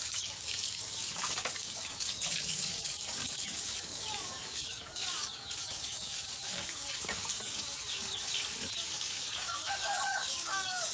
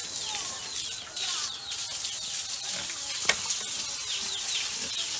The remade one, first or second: first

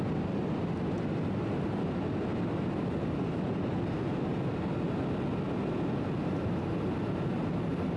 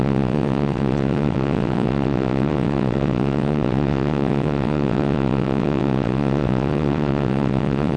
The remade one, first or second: second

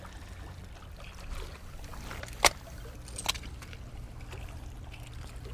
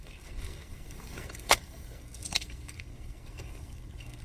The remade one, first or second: second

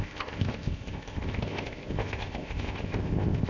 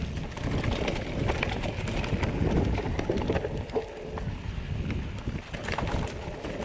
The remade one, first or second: first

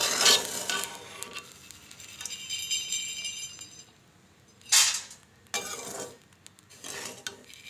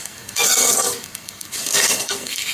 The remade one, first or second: second